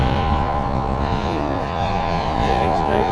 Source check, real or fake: fake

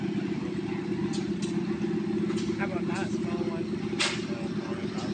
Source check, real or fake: real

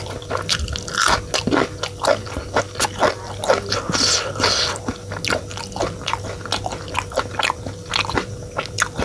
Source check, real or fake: real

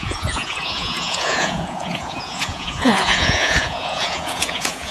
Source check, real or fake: fake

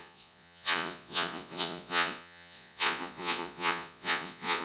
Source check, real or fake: fake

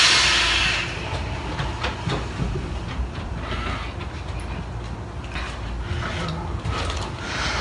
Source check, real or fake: real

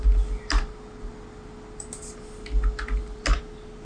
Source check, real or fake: real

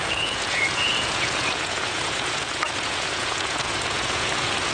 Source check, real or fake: fake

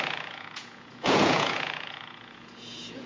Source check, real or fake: fake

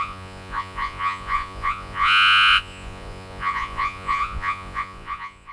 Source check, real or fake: fake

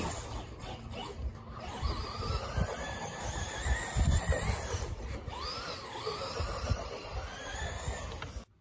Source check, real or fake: real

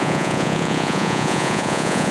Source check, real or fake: fake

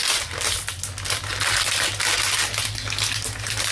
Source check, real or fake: real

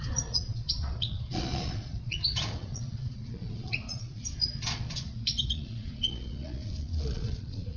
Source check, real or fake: fake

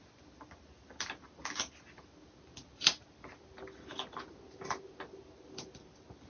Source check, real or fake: real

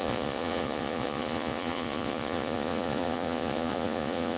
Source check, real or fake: fake